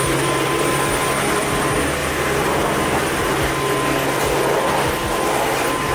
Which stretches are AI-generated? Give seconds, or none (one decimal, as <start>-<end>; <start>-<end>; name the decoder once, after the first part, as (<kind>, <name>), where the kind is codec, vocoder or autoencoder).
none